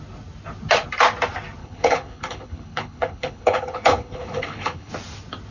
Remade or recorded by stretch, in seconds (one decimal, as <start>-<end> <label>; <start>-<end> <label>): 0.0-1.6 recorded; 1.6-4.9 remade; 4.9-5.5 recorded